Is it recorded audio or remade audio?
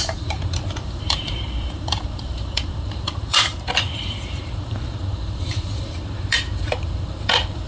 remade